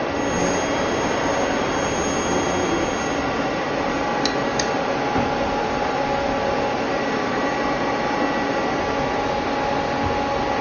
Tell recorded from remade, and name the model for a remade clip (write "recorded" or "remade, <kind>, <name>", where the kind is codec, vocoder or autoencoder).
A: recorded